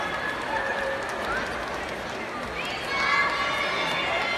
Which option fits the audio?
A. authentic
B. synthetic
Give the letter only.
A